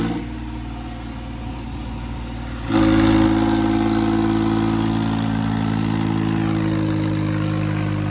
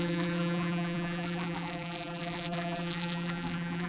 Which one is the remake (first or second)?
second